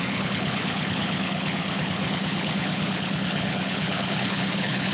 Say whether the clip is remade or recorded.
remade